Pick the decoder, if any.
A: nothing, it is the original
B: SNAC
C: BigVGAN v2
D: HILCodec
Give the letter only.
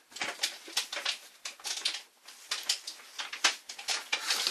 A